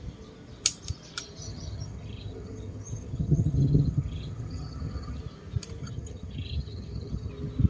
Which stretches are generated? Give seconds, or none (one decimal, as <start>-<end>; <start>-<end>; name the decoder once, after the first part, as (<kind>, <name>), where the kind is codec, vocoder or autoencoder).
1.4-5.2 (vocoder, HiFi-GAN); 5.8-7.3